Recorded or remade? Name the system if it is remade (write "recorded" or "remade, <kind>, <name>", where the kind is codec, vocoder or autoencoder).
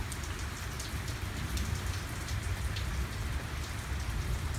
remade, vocoder, BigVGAN v2